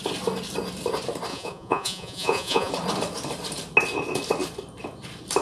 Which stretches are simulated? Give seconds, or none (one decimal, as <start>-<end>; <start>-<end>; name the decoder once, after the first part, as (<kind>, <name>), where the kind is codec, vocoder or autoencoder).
1.3-2.7 (vocoder, Vocos)